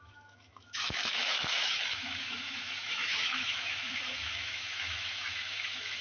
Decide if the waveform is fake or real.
fake